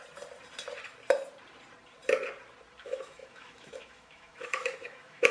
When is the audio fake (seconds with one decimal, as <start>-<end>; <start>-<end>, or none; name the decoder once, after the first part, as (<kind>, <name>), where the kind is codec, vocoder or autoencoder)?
2.8-5.3 (autoencoder, DAC-VAE)